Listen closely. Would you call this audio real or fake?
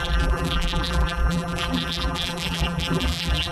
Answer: fake